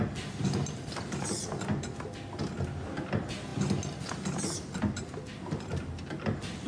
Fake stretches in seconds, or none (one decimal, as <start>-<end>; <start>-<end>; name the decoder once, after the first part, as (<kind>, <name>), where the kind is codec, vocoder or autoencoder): none